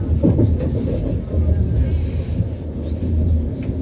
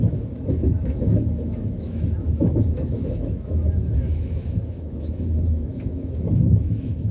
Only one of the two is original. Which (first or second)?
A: first